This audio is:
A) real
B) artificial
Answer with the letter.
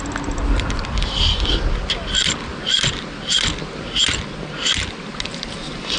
A